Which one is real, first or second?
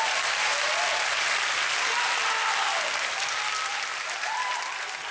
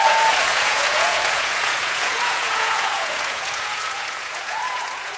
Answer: first